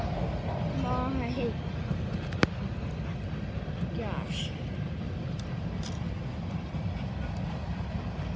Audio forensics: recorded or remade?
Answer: recorded